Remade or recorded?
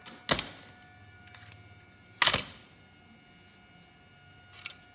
recorded